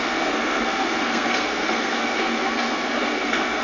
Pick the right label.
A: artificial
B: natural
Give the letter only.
A